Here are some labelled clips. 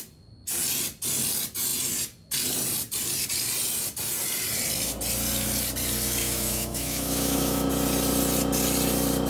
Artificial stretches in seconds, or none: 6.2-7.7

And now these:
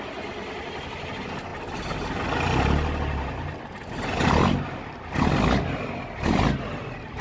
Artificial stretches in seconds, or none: none

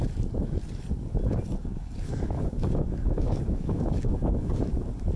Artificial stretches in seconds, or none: 1.6-4.7

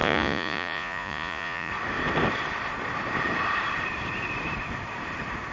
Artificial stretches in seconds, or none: 0.0-1.7

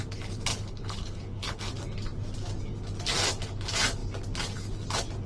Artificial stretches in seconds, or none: 0.5-1.6

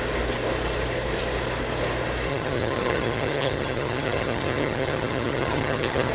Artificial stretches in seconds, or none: 2.3-6.1